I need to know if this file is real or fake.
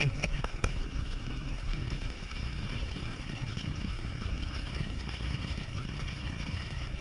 fake